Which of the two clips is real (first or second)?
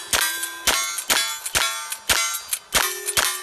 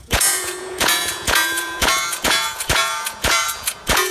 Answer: first